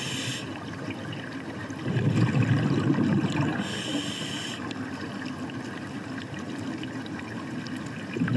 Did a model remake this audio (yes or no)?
no